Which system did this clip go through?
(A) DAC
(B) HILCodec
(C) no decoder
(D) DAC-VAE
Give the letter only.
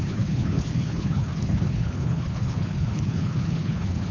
B